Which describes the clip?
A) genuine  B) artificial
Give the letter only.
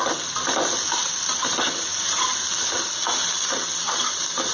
A